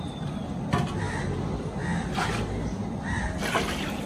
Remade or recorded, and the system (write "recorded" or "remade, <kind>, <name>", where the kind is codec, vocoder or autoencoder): recorded